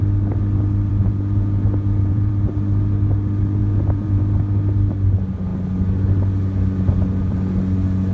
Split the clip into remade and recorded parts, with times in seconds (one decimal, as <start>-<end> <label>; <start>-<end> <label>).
0.0-0.9 recorded; 0.9-2.3 remade; 2.3-3.6 recorded; 3.6-4.2 remade; 4.2-8.1 recorded